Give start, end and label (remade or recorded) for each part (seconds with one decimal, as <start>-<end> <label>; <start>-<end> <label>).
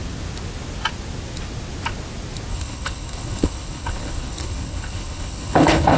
0.0-2.5 recorded; 2.5-6.0 remade